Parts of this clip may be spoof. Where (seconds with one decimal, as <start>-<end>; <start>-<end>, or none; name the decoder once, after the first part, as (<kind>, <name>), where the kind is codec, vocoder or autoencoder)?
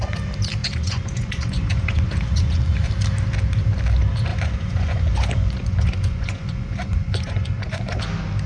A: 0.6-2.9 (vocoder, Vocos); 4.3-8.0